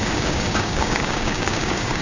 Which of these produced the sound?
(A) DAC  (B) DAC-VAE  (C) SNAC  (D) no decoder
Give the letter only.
A